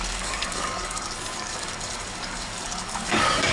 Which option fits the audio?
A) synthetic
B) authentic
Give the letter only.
A